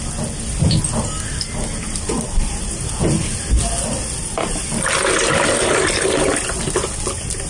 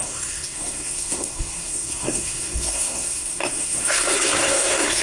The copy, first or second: second